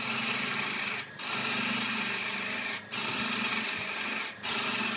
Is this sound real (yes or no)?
yes